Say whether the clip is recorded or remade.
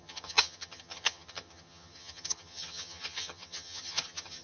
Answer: remade